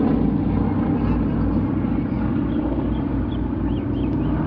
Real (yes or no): yes